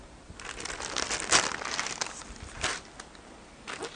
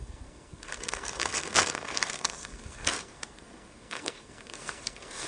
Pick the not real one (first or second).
second